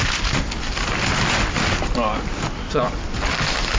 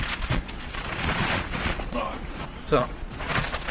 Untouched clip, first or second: first